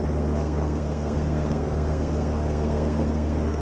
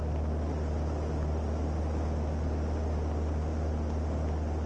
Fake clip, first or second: first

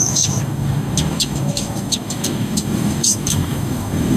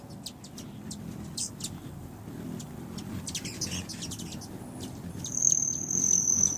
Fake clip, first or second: first